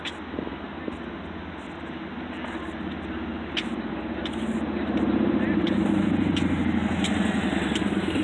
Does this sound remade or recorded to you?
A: recorded